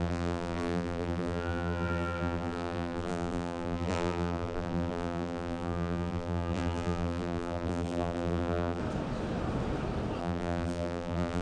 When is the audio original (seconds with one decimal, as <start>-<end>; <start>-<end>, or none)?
8.8-10.2